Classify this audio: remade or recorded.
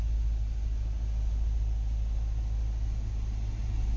recorded